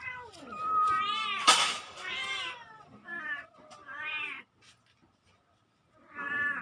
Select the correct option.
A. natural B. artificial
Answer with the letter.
A